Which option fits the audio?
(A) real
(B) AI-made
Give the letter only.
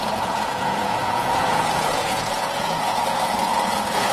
B